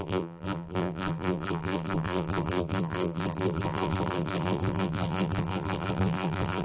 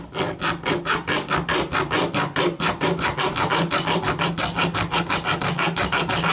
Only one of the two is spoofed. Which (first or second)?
first